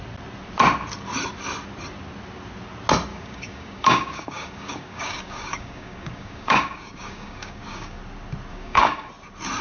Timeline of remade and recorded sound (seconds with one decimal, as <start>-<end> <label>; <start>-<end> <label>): 0.0-3.1 recorded; 3.1-8.0 remade; 8.0-8.5 recorded; 8.5-9.1 remade; 9.1-9.6 recorded